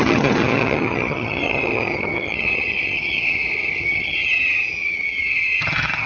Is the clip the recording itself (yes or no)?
no